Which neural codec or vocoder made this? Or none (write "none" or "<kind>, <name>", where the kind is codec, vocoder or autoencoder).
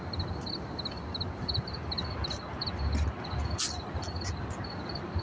none